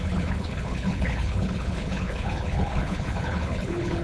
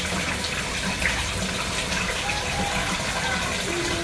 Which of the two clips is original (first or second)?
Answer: second